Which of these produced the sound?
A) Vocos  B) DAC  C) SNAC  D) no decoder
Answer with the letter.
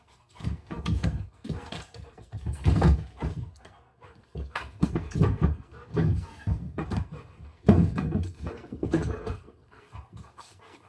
C